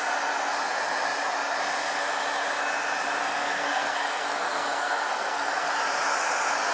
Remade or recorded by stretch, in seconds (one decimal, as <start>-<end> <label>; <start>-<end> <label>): 0.0-3.2 recorded; 3.2-5.7 remade; 5.7-6.7 recorded